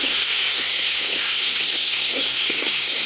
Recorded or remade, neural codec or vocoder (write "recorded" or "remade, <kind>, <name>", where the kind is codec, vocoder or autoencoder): remade, codec, SNAC